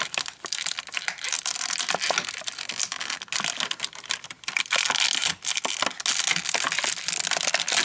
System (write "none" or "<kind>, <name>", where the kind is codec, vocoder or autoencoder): none